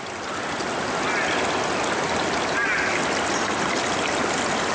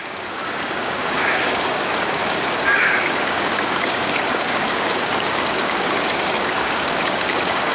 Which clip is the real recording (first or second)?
first